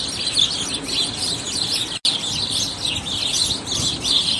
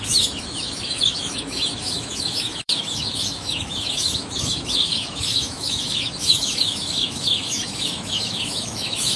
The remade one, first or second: second